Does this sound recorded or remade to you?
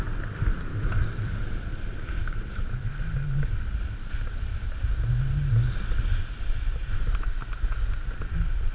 recorded